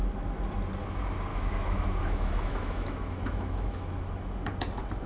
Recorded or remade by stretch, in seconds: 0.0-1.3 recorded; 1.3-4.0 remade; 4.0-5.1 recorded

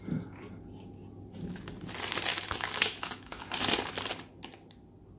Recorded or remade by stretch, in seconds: 0.0-2.3 recorded; 2.3-3.4 remade; 3.4-5.2 recorded